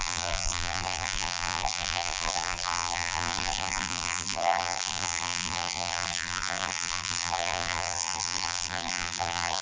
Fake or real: fake